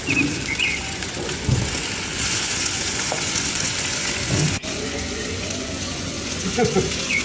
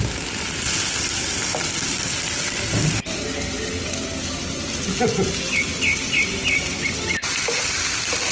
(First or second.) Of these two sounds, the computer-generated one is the first